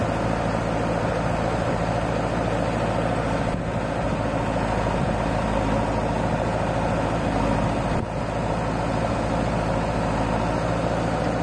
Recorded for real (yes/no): yes